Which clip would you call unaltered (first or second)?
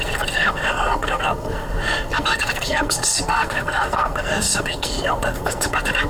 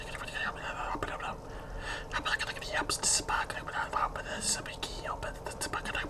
second